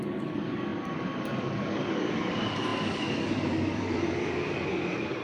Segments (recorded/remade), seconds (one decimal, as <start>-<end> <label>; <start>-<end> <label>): 0.0-5.2 remade